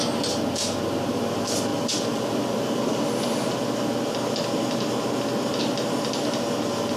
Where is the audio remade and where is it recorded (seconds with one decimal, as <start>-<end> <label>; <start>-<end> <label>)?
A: 0.0-7.0 recorded